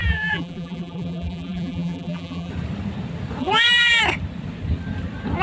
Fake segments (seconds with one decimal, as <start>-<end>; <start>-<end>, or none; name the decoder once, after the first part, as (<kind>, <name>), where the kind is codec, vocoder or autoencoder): 0.0-2.5 (vocoder, BigVGAN v2); 3.4-4.0